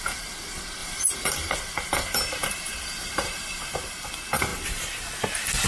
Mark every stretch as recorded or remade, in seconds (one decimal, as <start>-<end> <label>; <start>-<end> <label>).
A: 0.0-0.8 recorded; 0.8-1.6 remade; 1.6-2.4 recorded; 2.4-4.1 remade; 4.1-4.5 recorded; 4.5-5.1 remade; 5.1-5.7 recorded